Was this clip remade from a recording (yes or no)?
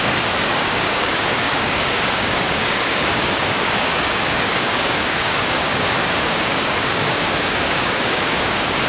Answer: yes